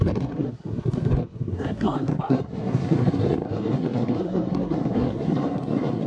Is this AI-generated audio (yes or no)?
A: yes